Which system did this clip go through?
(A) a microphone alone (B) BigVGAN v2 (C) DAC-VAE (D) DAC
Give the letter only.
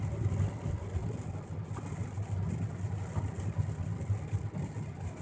A